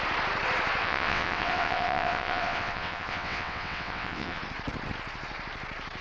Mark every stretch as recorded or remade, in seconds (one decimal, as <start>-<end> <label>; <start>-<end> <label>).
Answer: 0.0-0.8 recorded; 0.8-4.4 remade; 4.4-6.0 recorded